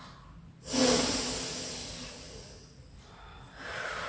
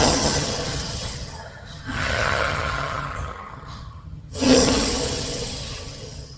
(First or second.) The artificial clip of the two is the second